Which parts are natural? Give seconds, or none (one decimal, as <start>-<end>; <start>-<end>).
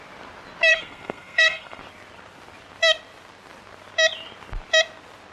0.0-0.7; 1.8-5.3